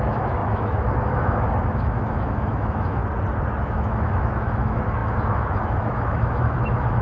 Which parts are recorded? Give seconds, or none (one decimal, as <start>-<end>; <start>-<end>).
3.0-3.6